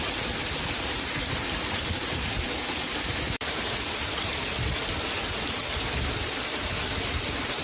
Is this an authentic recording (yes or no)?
no